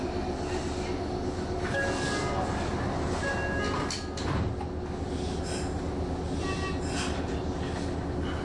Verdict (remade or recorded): recorded